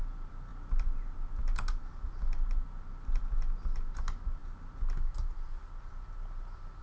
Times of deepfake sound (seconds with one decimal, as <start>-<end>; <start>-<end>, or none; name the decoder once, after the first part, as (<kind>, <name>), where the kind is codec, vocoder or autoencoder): none